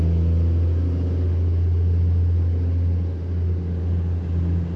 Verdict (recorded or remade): recorded